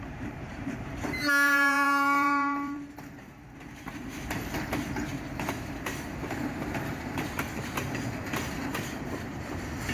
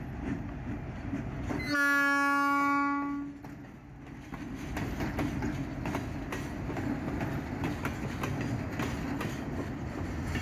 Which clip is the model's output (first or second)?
first